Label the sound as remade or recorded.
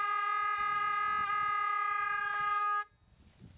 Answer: recorded